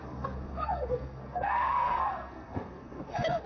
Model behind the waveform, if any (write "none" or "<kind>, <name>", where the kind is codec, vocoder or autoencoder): codec, SNAC